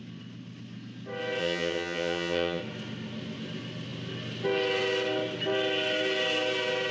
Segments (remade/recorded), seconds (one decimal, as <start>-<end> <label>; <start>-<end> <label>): 0.0-1.4 recorded; 1.4-2.6 remade; 2.6-6.9 recorded